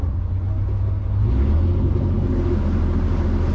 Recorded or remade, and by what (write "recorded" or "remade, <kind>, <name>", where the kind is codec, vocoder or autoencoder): recorded